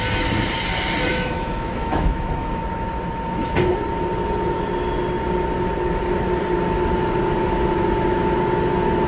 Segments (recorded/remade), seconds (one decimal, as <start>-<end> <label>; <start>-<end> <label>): 0.0-1.1 recorded; 1.1-2.6 remade; 2.6-9.1 recorded